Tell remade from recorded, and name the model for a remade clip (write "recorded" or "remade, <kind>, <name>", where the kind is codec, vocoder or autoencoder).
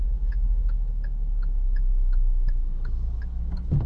remade, codec, DAC